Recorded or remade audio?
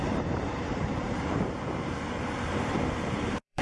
remade